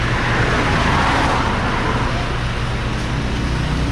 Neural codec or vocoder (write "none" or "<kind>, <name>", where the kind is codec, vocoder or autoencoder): none